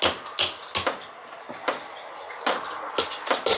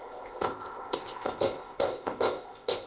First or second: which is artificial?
second